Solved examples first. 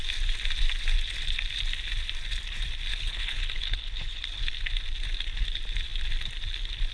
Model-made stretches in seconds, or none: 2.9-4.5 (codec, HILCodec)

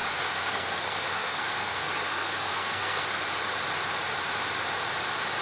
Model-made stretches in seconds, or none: 0.0-3.2 (codec, SNAC)

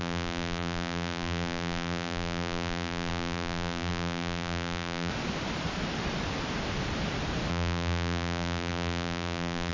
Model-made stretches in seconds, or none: 0.0-5.1 (vocoder, BigVGAN v2); 7.5-9.7

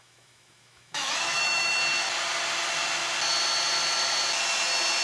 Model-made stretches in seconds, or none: 0.0-1.8 (autoencoder, DAC-VAE)